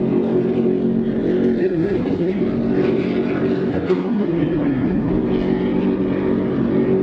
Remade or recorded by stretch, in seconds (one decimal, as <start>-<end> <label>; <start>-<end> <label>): 0.0-1.6 recorded; 1.6-2.4 remade; 2.4-3.7 recorded; 3.7-5.1 remade; 5.1-7.0 recorded